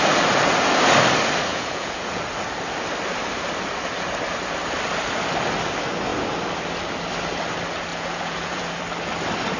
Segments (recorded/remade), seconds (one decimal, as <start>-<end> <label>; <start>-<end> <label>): 0.0-1.5 recorded; 1.5-2.2 remade; 2.2-7.9 recorded; 7.9-8.8 remade; 8.8-9.6 recorded

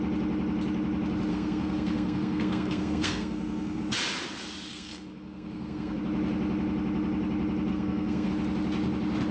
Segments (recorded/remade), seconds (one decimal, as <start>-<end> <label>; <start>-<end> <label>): 0.0-1.3 recorded; 1.3-3.8 remade; 3.8-4.7 recorded; 4.7-6.0 remade; 6.0-7.7 recorded; 7.7-8.3 remade; 8.3-9.3 recorded